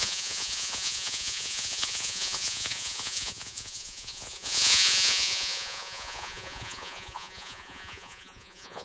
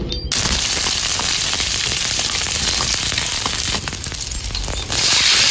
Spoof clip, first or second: first